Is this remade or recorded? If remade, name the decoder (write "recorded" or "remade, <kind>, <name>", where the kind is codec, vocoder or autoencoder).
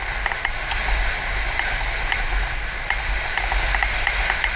recorded